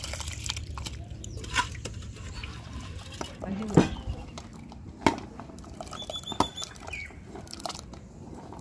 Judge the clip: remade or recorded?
remade